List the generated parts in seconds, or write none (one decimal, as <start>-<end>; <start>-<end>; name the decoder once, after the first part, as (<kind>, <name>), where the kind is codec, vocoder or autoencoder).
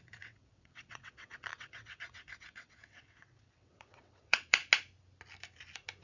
0.0-4.6 (vocoder, WaveNeXt)